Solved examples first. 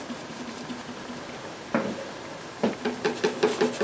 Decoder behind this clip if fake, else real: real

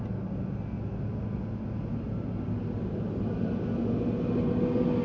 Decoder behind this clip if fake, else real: real